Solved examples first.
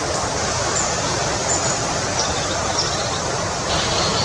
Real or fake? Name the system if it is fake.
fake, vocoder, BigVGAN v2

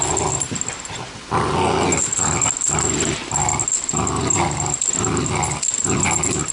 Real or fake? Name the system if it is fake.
real